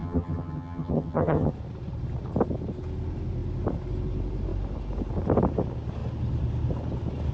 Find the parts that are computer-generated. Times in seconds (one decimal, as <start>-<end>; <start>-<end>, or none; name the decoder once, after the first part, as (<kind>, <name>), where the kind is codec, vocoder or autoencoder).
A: 0.0-1.5 (vocoder, HiFi-GAN)

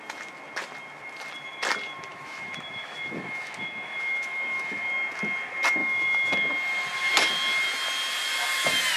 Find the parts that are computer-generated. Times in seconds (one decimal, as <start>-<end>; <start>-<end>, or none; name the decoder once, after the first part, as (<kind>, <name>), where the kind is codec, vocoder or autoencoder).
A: 2.1-4.9 (autoencoder, DAC-VAE); 5.8-6.3

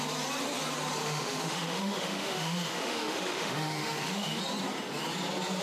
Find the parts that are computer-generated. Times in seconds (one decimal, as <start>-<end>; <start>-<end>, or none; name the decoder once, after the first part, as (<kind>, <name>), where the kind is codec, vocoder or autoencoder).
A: 1.0-4.4 (autoencoder, DAC-VAE)

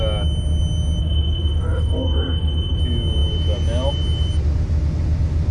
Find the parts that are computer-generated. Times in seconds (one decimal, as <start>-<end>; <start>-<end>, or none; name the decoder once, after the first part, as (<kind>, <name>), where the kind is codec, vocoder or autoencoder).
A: 1.0-2.8 (autoencoder, DAC-VAE)

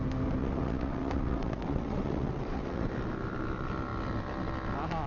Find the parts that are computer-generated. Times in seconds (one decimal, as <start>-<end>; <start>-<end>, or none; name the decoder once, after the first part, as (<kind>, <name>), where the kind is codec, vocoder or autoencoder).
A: 0.4-2.9 (vocoder, WaveNeXt)

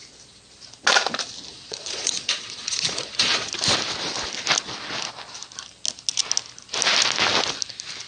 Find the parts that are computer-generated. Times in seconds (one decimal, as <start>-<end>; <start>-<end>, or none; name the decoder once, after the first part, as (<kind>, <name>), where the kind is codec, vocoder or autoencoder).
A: 1.5-3.5 (vocoder, Vocos)

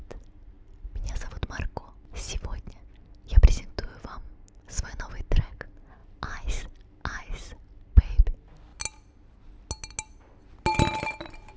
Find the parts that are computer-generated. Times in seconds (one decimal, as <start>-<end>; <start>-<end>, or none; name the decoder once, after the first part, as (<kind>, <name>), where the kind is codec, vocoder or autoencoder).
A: none